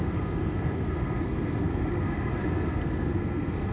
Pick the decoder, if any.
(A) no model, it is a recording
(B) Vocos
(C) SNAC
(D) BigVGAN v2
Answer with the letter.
C